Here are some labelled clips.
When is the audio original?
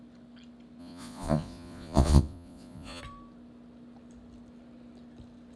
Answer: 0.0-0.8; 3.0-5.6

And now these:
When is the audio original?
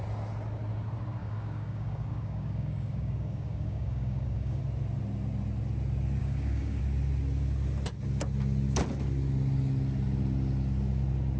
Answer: 0.0-1.2; 4.6-6.2; 6.8-11.4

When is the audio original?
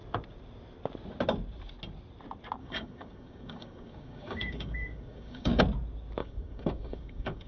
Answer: 0.0-2.6; 5.6-6.2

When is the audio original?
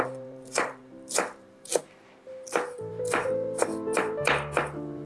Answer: 1.7-2.9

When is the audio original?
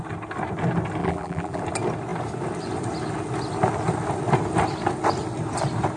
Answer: 0.0-1.0; 1.6-6.0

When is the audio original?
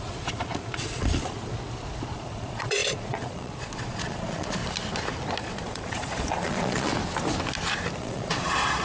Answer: 1.5-2.1; 4.6-5.4; 6.9-8.0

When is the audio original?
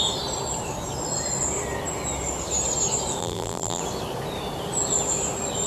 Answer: 0.0-3.2; 3.8-5.7